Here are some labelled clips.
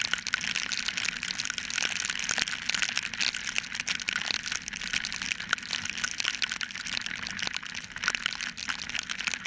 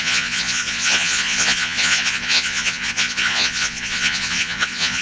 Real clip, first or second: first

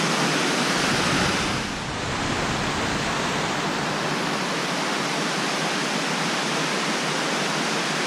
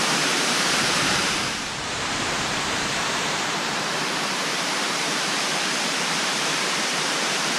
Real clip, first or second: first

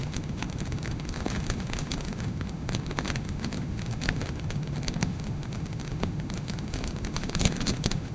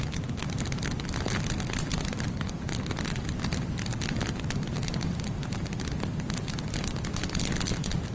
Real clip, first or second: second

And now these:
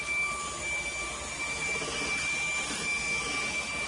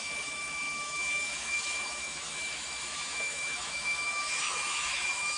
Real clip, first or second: first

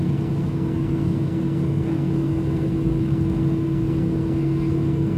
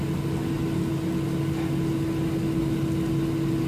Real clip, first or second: second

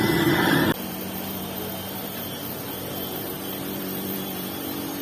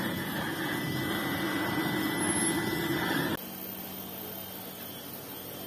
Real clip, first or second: second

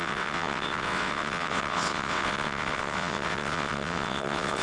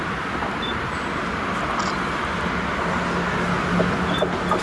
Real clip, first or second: second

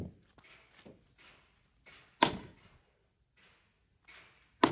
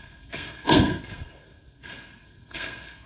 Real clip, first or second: first